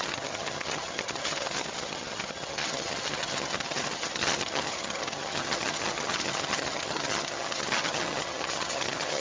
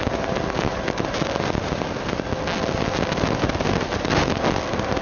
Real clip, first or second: second